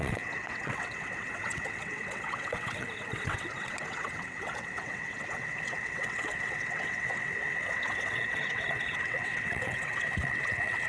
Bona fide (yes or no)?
no